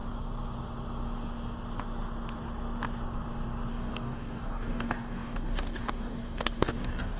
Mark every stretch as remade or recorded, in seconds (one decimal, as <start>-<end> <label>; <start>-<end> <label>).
0.0-3.7 recorded; 3.7-7.2 remade